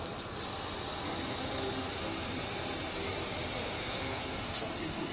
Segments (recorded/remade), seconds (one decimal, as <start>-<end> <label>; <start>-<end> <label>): 0.0-3.8 recorded; 3.8-5.1 remade